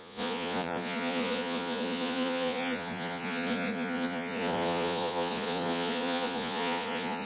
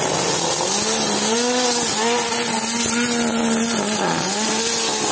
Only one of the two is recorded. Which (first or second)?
second